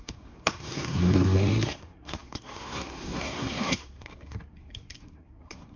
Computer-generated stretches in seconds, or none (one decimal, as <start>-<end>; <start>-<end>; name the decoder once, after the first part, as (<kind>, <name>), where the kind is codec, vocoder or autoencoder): 0.0-5.8 (codec, SNAC)